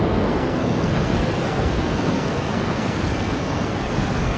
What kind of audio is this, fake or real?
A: fake